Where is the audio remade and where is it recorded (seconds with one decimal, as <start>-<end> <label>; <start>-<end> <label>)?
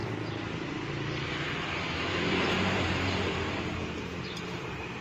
0.0-1.9 recorded; 1.9-5.0 remade